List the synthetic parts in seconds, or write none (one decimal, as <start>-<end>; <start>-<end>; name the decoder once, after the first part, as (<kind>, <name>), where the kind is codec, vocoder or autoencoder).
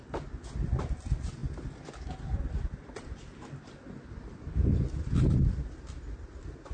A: none